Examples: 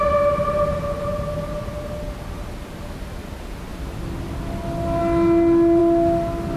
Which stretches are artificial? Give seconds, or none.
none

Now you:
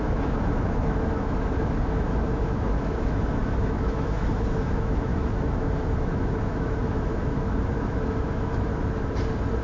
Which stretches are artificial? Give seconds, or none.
0.0-8.7 (autoencoder, DAC-VAE)

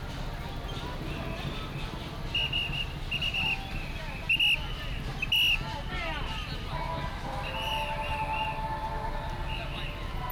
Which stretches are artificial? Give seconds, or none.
none

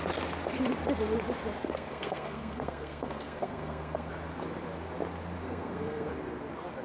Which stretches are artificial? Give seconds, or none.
1.6-4.1 (codec, SNAC); 5.4-6.1

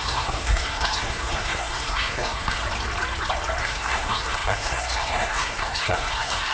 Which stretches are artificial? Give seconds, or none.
0.0-2.6 (codec, SNAC); 3.6-6.5